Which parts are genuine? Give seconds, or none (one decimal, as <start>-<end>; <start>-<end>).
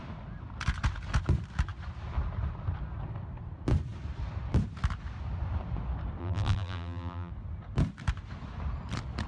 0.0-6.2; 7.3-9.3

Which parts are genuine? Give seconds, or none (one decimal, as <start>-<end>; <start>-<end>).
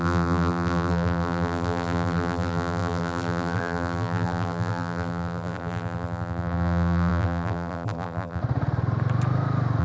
8.4-9.8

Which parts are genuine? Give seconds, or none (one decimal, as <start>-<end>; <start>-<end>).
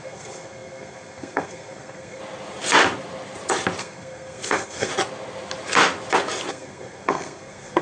2.2-3.8; 4.9-6.5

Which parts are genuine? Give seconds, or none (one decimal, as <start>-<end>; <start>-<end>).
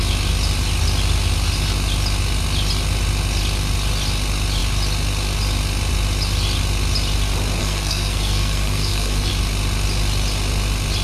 0.0-7.6; 9.3-11.0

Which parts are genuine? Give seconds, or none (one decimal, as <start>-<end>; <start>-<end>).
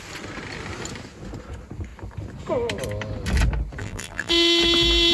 0.0-3.8; 4.3-5.1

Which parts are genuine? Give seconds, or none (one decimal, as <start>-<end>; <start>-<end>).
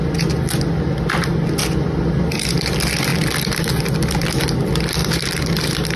0.0-1.6; 2.5-3.1; 3.8-5.0